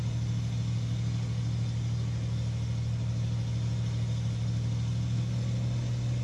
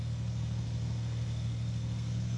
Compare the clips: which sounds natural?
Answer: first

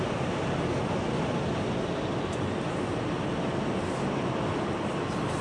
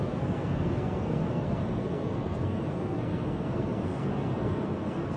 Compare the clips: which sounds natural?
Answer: first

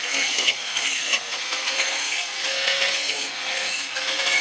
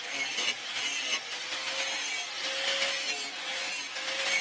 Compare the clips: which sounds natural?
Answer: second